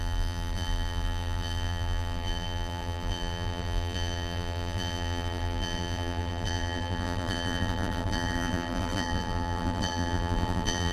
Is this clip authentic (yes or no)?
no